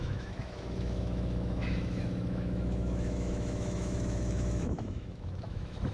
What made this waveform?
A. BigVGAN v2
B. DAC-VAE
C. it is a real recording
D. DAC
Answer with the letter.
B